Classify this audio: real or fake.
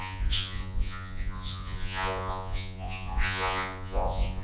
fake